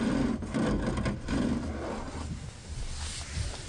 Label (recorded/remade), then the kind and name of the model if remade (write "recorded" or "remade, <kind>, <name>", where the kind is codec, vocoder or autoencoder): recorded